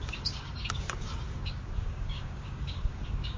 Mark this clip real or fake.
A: fake